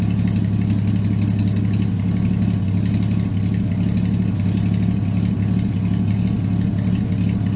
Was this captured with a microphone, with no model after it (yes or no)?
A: yes